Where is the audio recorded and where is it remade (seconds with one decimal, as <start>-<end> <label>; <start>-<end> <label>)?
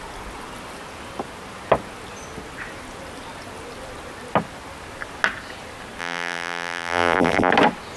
0.0-6.0 recorded; 6.0-7.5 remade; 7.5-8.0 recorded